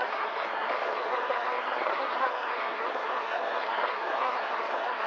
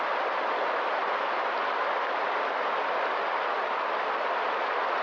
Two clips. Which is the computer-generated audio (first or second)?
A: first